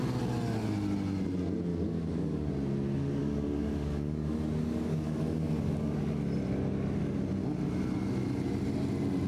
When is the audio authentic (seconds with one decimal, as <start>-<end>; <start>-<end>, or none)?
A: 0.0-1.7; 2.5-3.2; 6.0-9.3